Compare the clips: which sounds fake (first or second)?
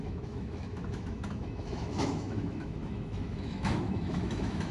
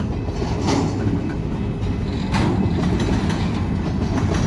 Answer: first